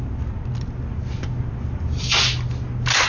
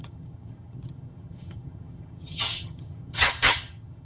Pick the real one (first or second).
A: first